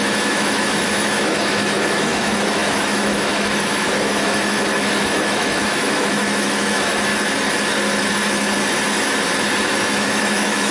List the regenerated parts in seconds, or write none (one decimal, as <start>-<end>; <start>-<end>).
0.0-7.1; 9.6-10.7